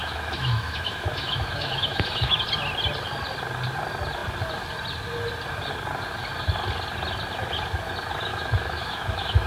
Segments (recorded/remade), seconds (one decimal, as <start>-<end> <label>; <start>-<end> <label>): 0.0-2.4 remade; 2.4-8.3 recorded; 8.3-9.5 remade